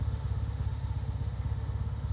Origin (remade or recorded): remade